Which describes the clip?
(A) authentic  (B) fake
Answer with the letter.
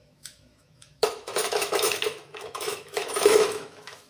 B